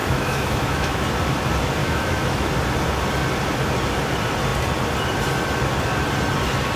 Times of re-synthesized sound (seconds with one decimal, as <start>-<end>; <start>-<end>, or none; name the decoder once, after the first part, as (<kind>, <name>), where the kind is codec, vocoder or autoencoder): 0.0-1.0 (autoencoder, DAC-VAE); 1.8-2.5